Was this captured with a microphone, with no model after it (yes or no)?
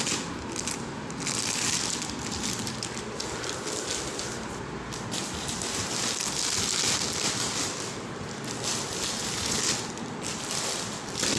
yes